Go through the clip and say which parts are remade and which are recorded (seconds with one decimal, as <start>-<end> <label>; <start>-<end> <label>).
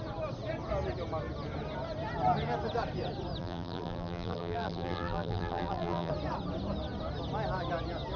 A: 0.0-3.4 recorded; 3.4-6.1 remade; 6.1-8.2 recorded